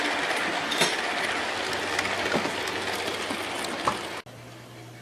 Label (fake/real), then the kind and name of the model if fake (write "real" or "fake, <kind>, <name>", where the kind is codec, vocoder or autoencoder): real